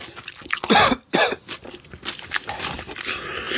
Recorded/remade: recorded